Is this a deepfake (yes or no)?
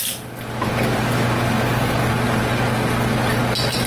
no